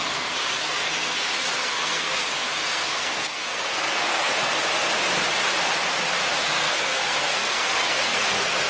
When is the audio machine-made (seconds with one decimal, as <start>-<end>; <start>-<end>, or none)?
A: 0.0-4.3; 6.4-8.7